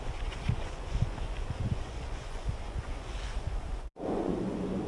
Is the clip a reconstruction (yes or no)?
yes